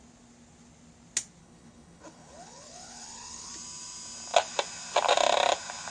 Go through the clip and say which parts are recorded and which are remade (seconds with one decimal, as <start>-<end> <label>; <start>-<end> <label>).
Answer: 0.0-1.4 recorded; 1.4-3.5 remade; 3.5-5.9 recorded